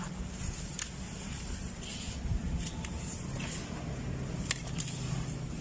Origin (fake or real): real